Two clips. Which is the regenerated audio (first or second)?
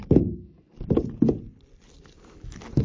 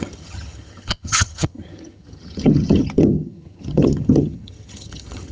second